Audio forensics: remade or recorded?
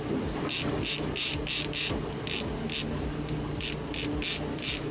recorded